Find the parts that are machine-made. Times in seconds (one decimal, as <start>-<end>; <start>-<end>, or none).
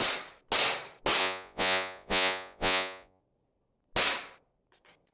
1.2-3.2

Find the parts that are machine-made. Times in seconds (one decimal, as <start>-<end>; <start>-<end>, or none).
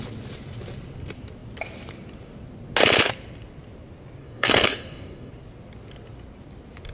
4.2-5.3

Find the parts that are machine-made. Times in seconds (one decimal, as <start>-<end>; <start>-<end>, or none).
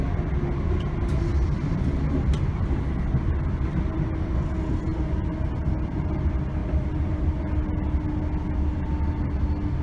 6.6-7.4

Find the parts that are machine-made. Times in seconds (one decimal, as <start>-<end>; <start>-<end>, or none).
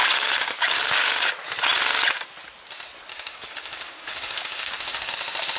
0.0-1.3; 3.1-5.1